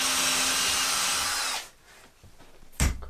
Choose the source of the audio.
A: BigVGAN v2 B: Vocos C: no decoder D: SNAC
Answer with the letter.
C